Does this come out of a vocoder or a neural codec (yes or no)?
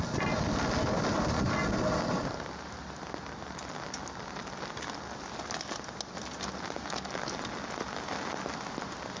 no